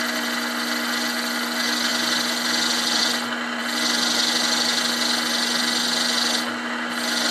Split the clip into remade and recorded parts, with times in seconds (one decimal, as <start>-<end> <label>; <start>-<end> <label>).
0.0-7.3 recorded